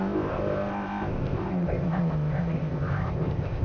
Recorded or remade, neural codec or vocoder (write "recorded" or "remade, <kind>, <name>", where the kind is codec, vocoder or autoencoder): remade, codec, ZipCodec